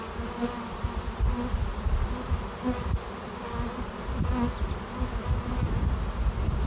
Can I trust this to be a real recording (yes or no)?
yes